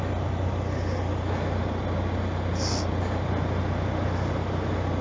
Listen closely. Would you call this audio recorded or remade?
recorded